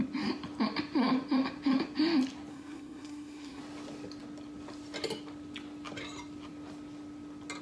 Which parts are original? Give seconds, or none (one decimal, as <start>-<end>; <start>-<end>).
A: 0.0-2.5; 3.6-7.6